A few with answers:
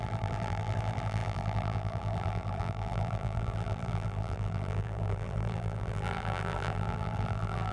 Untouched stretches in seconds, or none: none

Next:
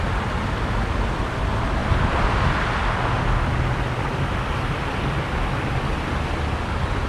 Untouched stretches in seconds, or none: 0.0-1.8; 6.1-7.1